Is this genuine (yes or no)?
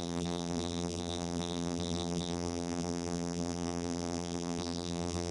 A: no